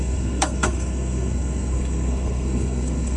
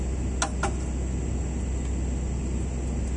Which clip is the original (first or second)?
second